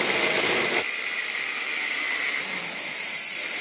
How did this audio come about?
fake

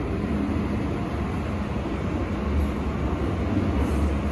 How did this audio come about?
real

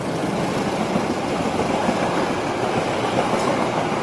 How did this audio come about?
real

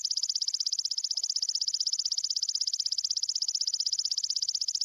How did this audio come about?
real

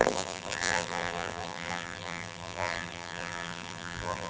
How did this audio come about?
fake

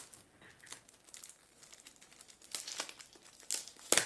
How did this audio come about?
real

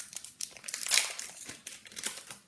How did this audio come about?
fake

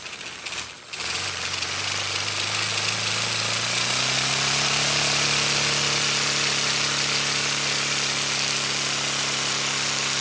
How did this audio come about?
real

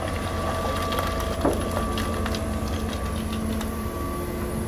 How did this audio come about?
real